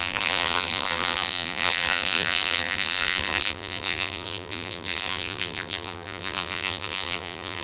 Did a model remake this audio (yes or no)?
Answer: yes